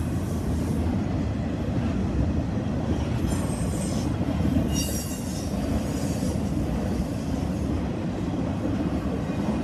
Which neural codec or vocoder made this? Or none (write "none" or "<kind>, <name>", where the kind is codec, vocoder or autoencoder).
none